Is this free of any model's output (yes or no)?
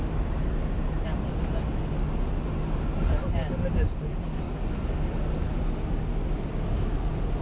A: yes